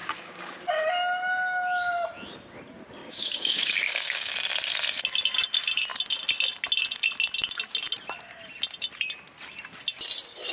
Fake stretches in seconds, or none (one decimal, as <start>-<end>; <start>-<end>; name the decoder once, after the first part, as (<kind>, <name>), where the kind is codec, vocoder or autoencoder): 0.0-0.6 (codec, DAC); 3.0-4.3